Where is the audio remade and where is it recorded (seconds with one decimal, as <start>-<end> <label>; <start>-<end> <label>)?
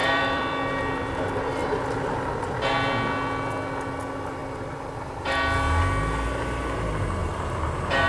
0.0-0.8 remade; 0.8-7.2 recorded; 7.2-8.1 remade